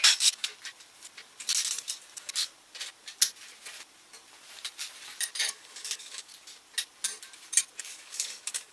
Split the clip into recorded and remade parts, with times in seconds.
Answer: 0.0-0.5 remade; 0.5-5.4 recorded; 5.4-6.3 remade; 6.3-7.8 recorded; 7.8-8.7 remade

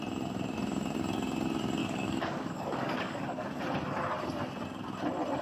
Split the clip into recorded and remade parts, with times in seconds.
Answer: 0.0-1.8 recorded; 1.8-3.6 remade; 3.6-5.4 recorded